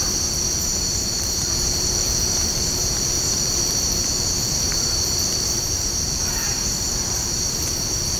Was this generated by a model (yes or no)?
yes